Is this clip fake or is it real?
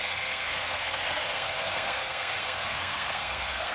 fake